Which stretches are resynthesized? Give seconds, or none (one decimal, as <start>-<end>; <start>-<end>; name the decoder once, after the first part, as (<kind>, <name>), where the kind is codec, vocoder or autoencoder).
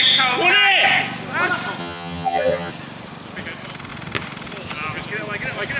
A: 1.8-2.7 (vocoder, HiFi-GAN)